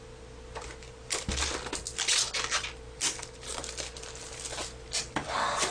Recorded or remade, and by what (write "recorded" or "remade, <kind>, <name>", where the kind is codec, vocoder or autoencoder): recorded